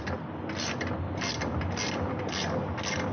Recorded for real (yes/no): yes